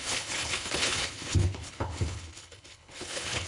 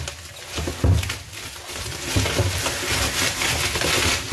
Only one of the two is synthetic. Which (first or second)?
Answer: first